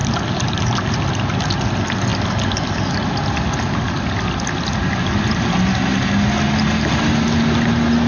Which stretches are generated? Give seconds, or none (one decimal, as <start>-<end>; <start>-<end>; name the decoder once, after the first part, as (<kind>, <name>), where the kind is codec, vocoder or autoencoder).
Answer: none